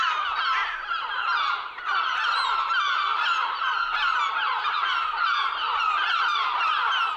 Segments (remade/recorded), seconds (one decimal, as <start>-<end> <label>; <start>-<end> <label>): 0.0-7.2 recorded